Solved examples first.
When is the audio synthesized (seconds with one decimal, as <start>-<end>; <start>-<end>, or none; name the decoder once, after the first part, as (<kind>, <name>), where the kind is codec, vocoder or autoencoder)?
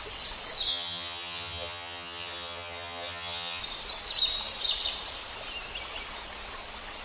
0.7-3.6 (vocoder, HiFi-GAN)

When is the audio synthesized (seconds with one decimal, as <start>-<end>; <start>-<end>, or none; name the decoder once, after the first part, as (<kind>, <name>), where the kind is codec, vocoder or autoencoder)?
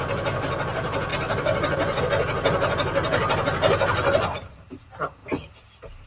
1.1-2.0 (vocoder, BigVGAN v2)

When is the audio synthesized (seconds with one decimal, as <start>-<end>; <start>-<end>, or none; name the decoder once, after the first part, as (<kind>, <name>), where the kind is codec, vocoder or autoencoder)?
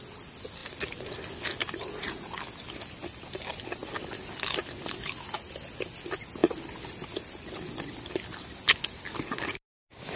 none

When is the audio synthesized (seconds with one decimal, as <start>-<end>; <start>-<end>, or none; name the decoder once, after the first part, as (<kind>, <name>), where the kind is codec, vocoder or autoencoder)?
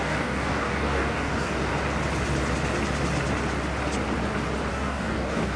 0.0-1.7 (codec, DAC); 4.7-5.6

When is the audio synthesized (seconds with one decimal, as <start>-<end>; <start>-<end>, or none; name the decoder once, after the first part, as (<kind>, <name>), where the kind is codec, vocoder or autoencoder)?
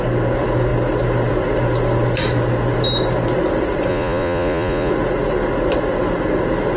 3.9-4.9 (vocoder, Vocos)